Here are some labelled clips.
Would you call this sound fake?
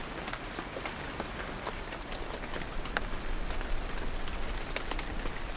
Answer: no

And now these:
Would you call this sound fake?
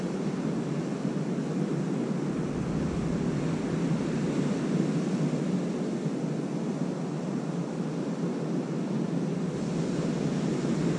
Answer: no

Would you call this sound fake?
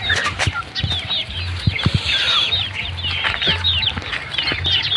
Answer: no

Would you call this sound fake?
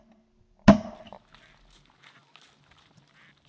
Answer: no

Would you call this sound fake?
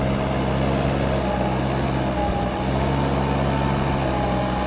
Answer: no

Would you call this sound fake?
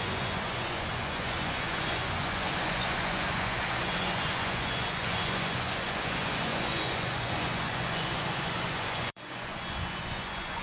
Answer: yes